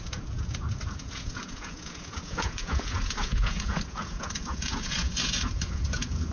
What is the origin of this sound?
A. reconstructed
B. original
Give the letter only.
A